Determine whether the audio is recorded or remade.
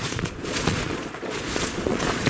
remade